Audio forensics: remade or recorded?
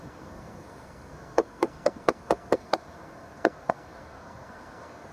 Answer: remade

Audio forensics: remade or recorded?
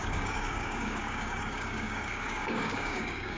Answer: remade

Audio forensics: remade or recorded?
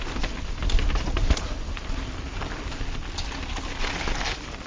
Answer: remade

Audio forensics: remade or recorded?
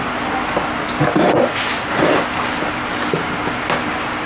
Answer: recorded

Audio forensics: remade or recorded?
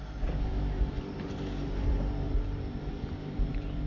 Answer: remade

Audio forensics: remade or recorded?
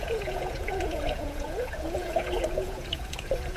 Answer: remade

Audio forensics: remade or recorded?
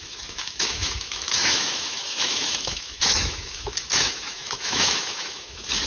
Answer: remade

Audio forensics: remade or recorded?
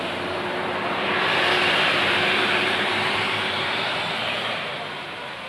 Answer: remade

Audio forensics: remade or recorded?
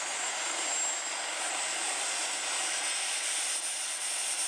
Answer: recorded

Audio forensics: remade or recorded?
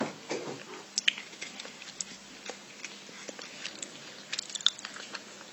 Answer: recorded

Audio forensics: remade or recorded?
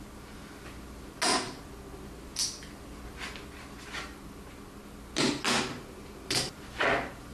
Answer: recorded